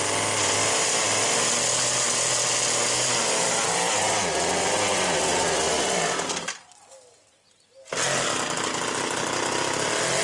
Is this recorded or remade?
recorded